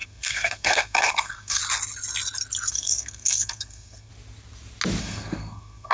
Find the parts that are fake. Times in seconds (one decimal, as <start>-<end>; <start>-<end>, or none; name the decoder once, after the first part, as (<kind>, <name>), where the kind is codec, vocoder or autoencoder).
0.0-1.6 (codec, SNAC); 2.7-4.1; 5.0-5.9